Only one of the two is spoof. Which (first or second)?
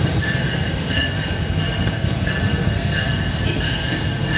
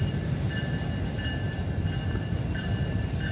first